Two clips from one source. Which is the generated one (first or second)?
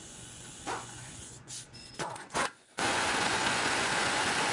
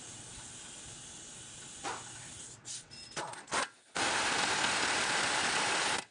first